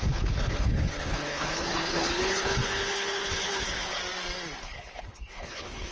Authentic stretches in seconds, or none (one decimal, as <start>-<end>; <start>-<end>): 4.0-4.6